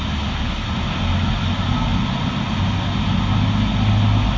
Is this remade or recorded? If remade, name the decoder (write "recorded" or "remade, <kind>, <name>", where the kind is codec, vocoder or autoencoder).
recorded